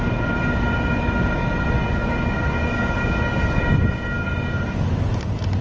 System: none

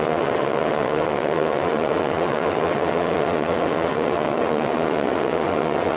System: vocoder, WaveNeXt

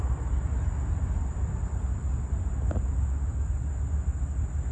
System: none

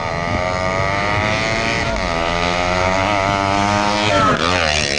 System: none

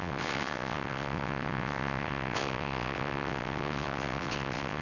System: vocoder, WaveNeXt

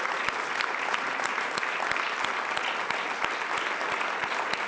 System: none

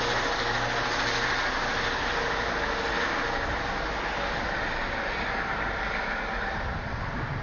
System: none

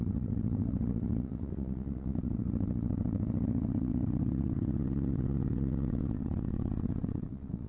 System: vocoder, WaveNeXt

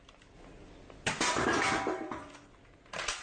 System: none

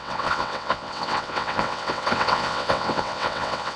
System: vocoder, WaveNeXt